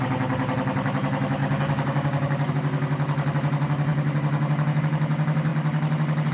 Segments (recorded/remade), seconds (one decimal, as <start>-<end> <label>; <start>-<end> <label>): 0.0-1.4 recorded; 1.4-2.5 remade; 2.5-6.3 recorded